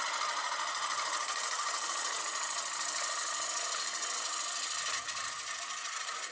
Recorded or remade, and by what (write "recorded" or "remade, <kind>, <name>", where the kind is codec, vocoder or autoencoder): recorded